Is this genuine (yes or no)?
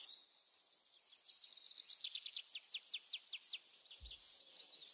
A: yes